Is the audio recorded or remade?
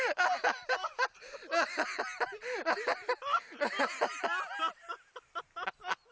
recorded